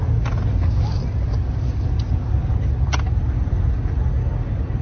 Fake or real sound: real